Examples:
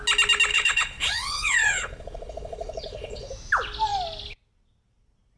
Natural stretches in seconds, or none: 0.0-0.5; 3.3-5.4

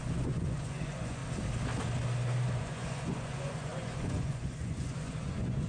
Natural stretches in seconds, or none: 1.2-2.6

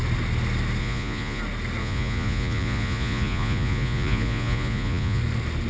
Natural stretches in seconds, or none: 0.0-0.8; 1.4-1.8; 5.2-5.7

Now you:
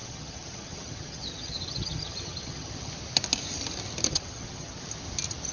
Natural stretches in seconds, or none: 2.9-4.1; 4.8-5.5